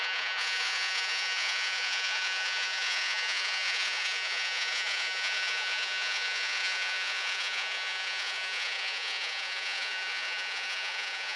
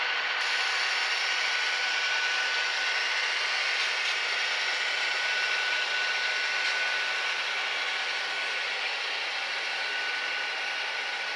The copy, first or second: first